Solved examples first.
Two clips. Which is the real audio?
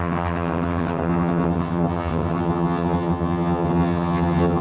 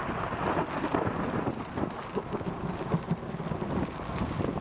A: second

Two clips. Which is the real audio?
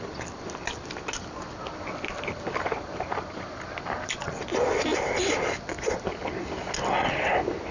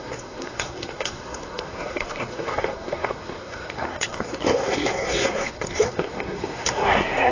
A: first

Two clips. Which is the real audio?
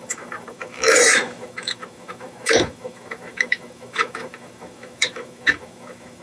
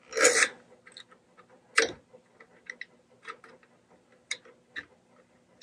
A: second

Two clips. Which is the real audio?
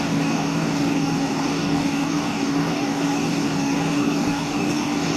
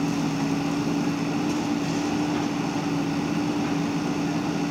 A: second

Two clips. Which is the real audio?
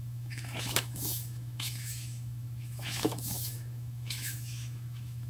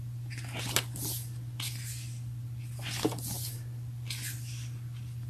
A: second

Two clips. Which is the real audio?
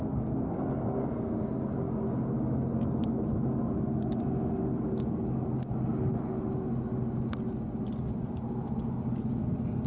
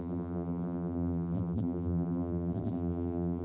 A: first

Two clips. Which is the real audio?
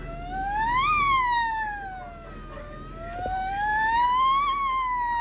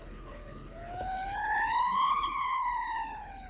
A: first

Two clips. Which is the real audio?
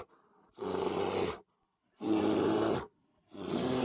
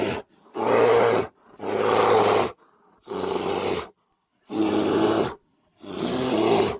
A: first